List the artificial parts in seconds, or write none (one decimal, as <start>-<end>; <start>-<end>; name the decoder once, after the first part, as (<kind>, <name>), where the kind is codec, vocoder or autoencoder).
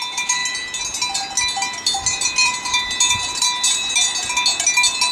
none